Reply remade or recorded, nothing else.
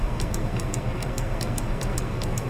remade